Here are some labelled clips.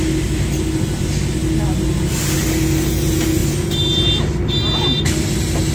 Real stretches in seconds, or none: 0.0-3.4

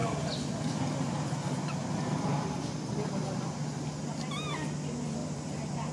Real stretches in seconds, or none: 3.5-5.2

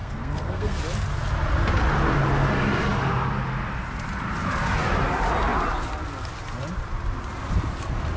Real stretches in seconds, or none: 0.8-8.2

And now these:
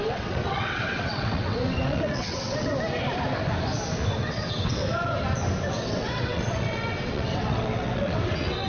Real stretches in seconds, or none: 2.7-4.2; 4.8-5.7